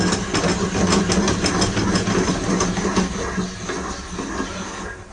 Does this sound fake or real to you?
real